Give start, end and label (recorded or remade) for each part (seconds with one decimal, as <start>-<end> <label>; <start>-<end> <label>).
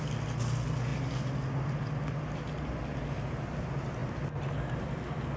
0.0-5.4 recorded